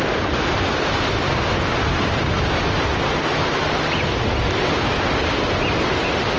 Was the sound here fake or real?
real